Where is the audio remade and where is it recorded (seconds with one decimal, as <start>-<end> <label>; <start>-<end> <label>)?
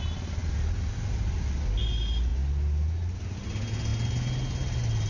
0.0-5.1 recorded